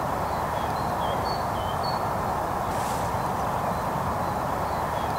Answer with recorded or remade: recorded